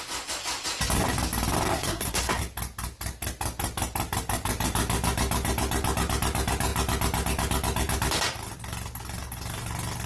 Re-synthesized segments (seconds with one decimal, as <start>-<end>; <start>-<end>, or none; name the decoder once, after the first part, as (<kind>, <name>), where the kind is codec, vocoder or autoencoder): 1.7-2.4 (codec, SNAC)